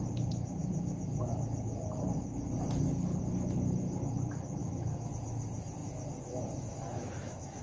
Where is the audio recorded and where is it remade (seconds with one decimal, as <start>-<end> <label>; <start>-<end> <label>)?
0.0-4.6 recorded; 4.6-5.1 remade; 5.1-5.8 recorded; 5.8-7.6 remade